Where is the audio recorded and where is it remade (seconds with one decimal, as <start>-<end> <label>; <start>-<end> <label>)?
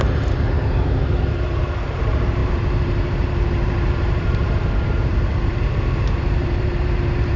0.0-7.4 remade